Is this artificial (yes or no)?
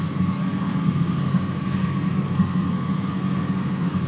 yes